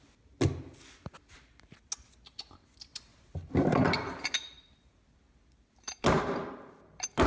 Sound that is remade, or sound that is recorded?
recorded